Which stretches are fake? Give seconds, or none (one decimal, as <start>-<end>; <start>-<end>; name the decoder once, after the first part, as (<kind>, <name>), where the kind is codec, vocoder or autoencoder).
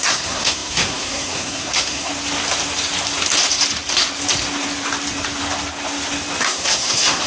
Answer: 0.0-2.1 (codec, SNAC); 6.4-7.3